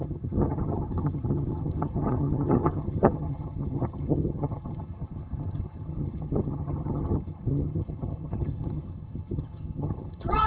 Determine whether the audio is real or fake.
fake